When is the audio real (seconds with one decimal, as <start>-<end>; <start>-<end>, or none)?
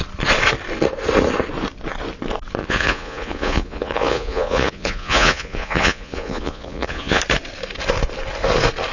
0.0-2.6; 7.2-8.9